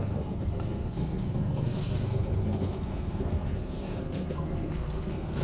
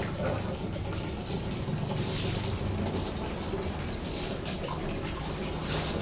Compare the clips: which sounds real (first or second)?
second